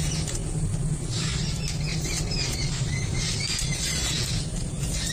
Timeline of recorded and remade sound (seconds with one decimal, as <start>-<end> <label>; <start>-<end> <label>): 0.0-1.9 recorded; 1.9-3.5 remade; 3.5-5.1 recorded

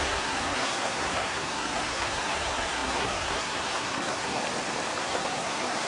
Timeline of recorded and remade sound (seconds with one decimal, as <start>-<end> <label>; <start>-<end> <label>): 0.0-4.4 remade; 4.4-5.0 recorded; 5.0-5.9 remade

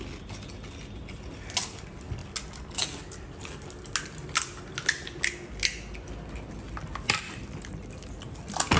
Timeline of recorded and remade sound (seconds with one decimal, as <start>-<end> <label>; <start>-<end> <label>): 0.0-8.8 recorded

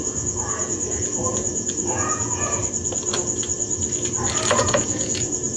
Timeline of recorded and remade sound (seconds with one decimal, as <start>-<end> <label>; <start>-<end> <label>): 0.0-2.6 remade; 2.6-4.6 recorded; 4.6-5.6 remade

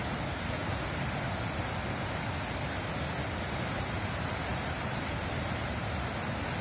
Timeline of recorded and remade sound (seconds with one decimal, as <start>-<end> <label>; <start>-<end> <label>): 0.0-4.5 recorded; 4.5-6.1 remade; 6.1-6.6 recorded

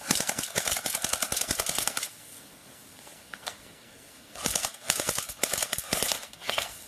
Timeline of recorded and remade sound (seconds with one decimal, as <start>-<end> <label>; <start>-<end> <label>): 0.0-6.9 remade

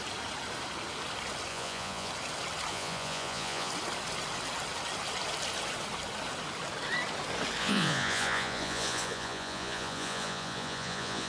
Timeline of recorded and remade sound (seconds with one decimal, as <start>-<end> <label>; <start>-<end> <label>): 0.0-1.5 recorded; 1.5-2.1 remade; 2.1-2.7 recorded; 2.7-3.7 remade; 3.7-7.6 recorded; 7.6-11.3 remade

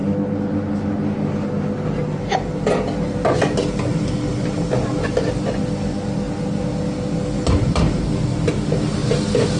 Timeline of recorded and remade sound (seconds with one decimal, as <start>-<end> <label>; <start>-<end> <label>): 0.0-9.6 recorded